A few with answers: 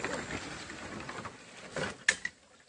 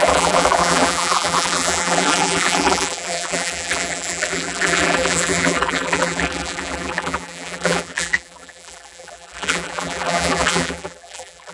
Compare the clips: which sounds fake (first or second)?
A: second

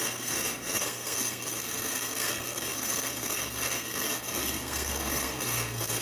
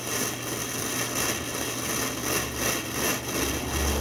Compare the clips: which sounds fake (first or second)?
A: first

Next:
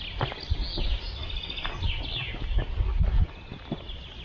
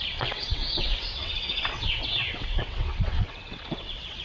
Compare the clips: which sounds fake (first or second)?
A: second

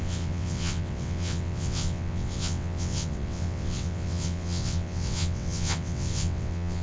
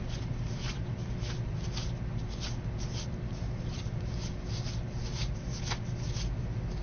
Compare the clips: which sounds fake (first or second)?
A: first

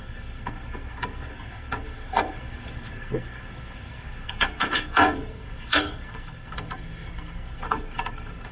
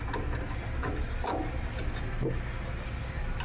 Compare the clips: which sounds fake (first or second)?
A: first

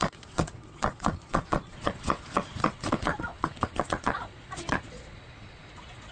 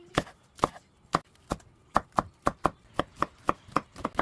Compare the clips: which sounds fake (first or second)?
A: first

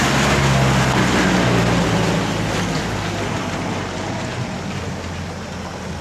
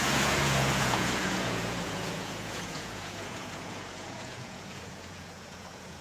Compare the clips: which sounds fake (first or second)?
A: second